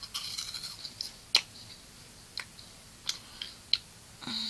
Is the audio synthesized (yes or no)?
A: no